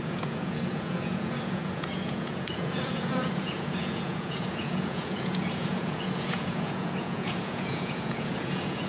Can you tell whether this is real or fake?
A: fake